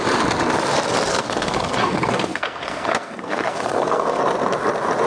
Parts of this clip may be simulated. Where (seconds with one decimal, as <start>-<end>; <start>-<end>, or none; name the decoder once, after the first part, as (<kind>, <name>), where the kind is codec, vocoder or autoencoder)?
1.1-4.2 (codec, SNAC)